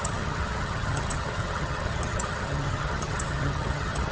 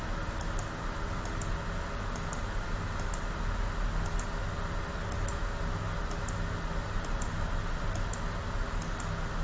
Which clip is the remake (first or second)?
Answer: first